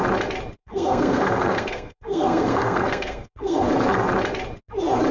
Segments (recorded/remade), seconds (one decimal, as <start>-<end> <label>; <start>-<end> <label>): 0.0-0.6 recorded; 0.6-3.7 remade; 3.7-5.1 recorded